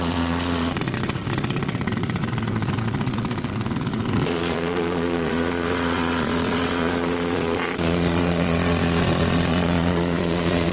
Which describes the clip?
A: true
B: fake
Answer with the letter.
B